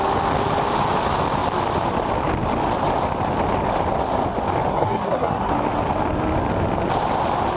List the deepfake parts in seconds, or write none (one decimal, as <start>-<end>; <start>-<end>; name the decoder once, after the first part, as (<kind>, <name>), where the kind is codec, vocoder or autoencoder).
4.7-5.5 (codec, SNAC)